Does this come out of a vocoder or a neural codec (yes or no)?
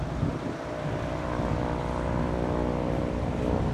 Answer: no